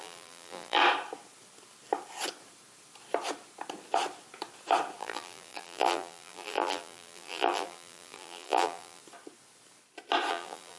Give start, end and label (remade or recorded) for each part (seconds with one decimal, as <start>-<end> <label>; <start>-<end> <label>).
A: 0.0-0.8 remade; 0.8-5.0 recorded; 5.0-9.0 remade; 9.0-10.3 recorded; 10.3-10.8 remade